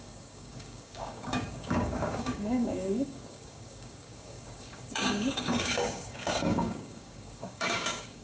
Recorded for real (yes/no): no